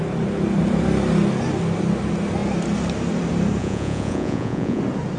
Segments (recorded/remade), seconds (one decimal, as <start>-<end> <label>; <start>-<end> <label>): 0.0-3.6 recorded; 3.6-4.8 remade; 4.8-5.2 recorded